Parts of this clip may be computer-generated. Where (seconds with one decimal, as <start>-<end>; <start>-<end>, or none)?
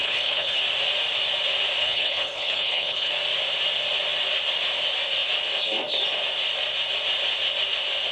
0.0-0.6; 1.8-3.1